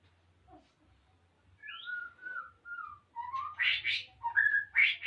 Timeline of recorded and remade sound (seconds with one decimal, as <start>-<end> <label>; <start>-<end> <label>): 0.0-5.1 recorded

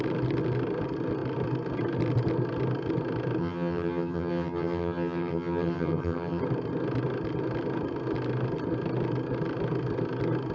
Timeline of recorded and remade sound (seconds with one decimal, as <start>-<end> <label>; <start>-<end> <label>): 0.0-3.4 recorded; 3.4-6.4 remade; 6.4-10.5 recorded

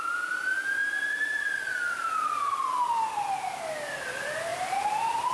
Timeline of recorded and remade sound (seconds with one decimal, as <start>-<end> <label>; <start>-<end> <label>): 0.0-4.5 recorded; 4.5-5.3 remade

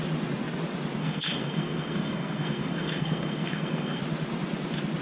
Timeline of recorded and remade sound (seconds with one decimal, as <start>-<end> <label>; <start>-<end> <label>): 0.0-1.0 recorded; 1.0-4.0 remade; 4.0-5.0 recorded